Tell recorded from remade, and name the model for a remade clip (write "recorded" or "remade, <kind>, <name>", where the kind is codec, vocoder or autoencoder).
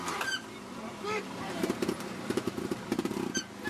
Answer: remade, vocoder, BigVGAN v2